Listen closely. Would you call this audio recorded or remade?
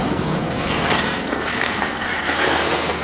remade